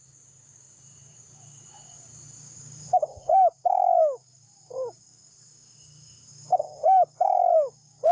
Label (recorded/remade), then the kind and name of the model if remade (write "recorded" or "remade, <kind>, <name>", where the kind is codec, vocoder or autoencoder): remade, codec, DAC